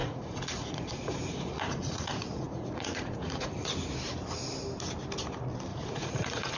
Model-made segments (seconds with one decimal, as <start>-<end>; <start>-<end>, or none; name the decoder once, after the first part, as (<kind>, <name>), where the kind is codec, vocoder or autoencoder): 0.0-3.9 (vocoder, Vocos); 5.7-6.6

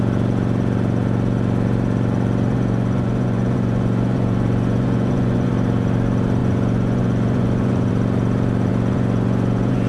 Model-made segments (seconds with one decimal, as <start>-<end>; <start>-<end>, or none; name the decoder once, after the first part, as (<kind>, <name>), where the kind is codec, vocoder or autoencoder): 2.5-5.5 (vocoder, Vocos); 6.4-7.9; 8.7-9.9

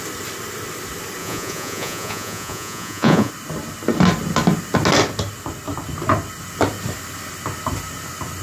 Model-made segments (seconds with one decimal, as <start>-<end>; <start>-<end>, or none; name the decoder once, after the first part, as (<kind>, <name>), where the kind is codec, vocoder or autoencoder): 1.2-3.3 (vocoder, Vocos)

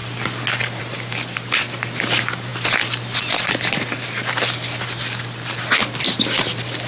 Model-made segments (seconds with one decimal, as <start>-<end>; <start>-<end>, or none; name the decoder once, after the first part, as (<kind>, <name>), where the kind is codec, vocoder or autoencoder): none

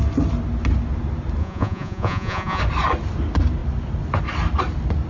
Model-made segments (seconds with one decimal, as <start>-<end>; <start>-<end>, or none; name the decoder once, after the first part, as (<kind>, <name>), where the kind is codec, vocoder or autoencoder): 1.4-2.6 (vocoder, Vocos)